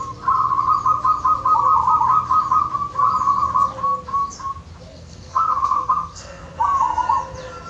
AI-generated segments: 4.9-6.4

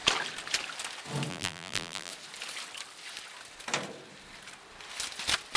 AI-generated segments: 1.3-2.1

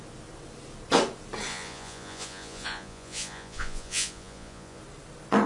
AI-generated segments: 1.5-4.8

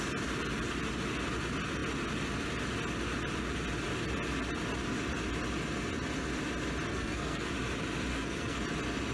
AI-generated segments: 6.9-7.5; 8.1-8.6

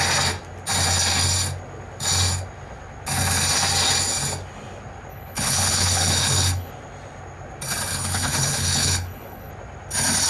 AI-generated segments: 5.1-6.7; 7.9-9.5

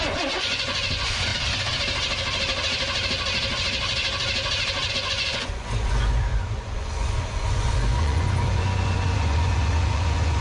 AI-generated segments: 0.0-1.3; 4.9-10.4

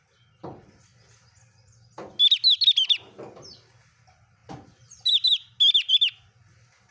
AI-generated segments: none